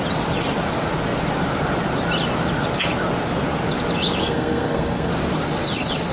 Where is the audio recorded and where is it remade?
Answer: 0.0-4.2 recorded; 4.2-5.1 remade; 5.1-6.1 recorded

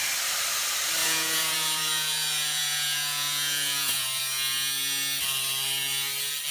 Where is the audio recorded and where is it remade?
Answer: 0.0-1.0 recorded; 1.0-4.2 remade; 4.2-6.5 recorded

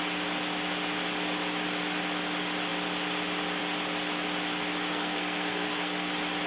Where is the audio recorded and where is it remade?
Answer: 0.0-4.9 recorded; 4.9-6.1 remade; 6.1-6.5 recorded